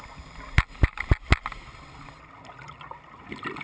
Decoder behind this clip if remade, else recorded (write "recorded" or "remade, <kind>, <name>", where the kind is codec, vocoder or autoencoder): recorded